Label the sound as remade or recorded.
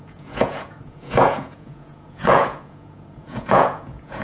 remade